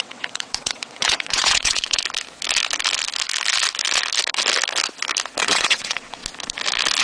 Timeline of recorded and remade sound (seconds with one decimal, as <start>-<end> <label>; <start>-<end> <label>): 0.0-2.0 remade; 2.0-5.4 recorded; 5.4-6.2 remade; 6.2-7.0 recorded